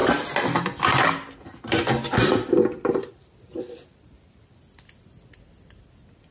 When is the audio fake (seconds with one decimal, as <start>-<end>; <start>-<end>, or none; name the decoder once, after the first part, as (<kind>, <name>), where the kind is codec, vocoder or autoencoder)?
none